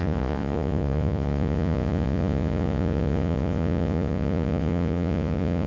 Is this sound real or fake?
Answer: fake